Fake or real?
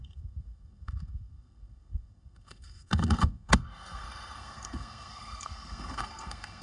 fake